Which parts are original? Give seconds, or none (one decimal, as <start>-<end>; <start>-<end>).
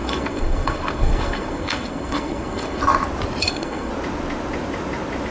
2.8-3.4; 3.9-5.3